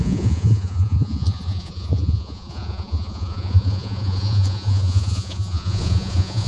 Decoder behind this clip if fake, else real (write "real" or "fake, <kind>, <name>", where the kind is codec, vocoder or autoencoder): fake, vocoder, Vocos